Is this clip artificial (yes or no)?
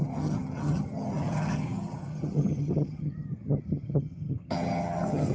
yes